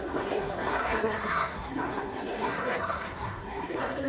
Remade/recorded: remade